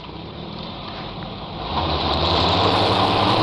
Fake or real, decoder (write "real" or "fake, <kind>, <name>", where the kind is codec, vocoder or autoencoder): fake, vocoder, BigVGAN v2